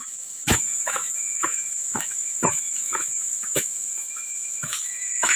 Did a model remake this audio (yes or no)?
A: yes